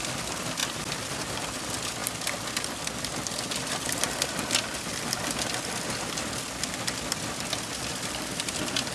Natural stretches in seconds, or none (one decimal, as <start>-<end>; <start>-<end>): 0.0-0.6; 1.3-8.9